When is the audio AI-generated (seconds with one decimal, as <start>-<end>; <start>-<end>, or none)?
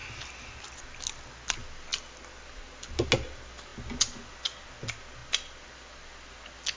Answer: none